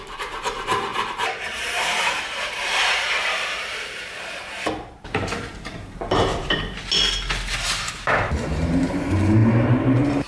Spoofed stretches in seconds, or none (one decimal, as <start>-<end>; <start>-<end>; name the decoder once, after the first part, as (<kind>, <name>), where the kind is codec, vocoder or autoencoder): 0.0-6.3 (vocoder, BigVGAN v2); 8.3-10.3